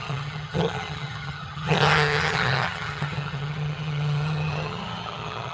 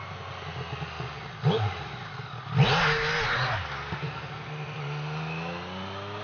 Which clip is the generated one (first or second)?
first